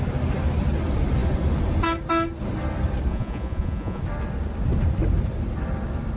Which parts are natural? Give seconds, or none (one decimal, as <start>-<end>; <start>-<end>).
0.0-3.1; 4.0-6.2